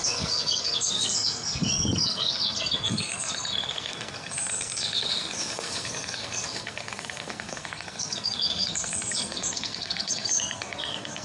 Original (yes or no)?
no